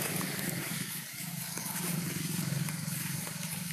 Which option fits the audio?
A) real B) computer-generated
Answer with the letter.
B